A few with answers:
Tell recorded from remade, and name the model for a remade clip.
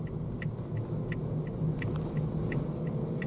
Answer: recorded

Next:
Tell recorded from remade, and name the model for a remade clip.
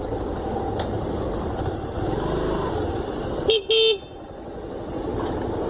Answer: recorded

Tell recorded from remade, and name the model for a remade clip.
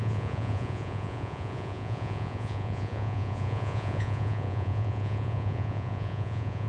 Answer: remade, vocoder, Vocos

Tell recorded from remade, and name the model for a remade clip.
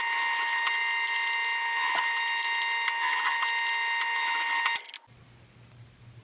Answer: recorded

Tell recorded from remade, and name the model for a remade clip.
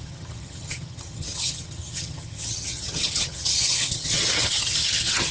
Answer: remade, vocoder, HiFi-GAN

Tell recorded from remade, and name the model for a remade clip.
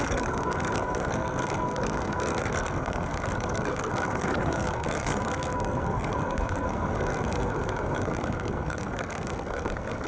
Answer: remade, codec, SNAC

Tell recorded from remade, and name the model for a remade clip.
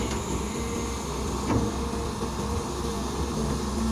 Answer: recorded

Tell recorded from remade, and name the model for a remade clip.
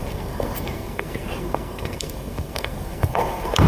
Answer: remade, codec, SNAC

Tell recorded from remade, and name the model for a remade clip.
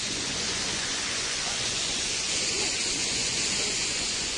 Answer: remade, vocoder, Vocos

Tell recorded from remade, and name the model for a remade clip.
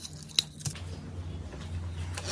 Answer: recorded